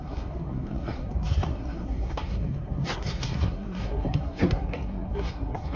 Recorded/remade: remade